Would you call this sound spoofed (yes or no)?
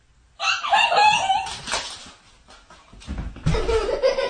no